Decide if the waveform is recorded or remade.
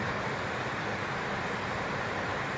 recorded